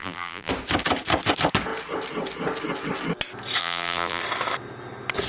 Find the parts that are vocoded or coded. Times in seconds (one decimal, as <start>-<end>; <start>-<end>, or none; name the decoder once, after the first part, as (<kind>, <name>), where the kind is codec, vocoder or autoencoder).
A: 0.0-0.5 (vocoder, BigVGAN v2); 3.6-4.2